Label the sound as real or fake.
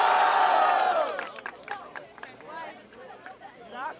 real